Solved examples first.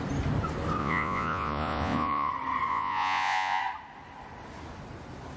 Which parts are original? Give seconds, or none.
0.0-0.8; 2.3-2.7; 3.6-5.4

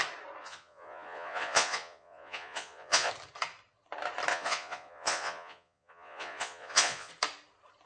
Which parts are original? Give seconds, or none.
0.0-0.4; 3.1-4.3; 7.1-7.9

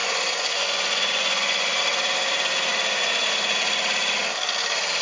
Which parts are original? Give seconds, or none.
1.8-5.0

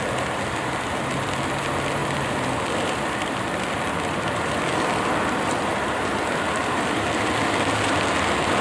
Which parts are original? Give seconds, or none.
0.0-8.6

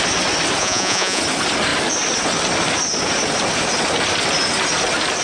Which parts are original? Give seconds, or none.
0.0-0.6; 1.2-5.2